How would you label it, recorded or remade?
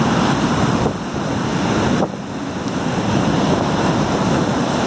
recorded